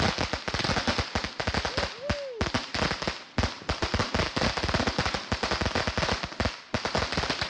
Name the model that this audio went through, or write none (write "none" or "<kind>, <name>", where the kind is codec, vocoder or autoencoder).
none